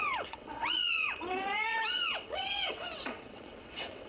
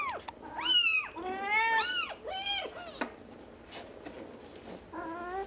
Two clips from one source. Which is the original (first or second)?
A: second